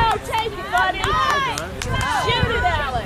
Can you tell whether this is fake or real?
real